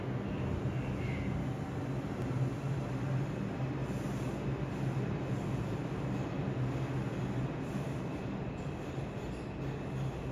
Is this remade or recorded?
recorded